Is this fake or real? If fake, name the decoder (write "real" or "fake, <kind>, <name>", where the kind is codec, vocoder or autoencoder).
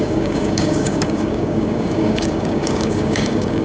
fake, codec, DAC